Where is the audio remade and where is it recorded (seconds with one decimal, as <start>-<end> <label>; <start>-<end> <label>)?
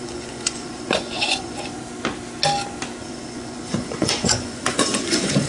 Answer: 0.0-1.7 remade; 1.7-3.0 recorded; 3.0-5.5 remade